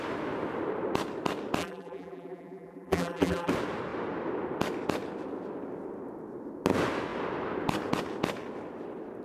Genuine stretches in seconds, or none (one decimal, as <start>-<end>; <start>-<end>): 0.0-1.6; 3.5-9.2